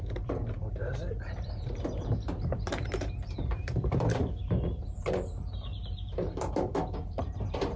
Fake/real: fake